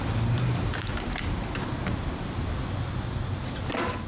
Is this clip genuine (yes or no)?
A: yes